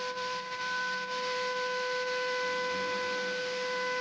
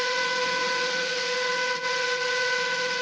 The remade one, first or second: second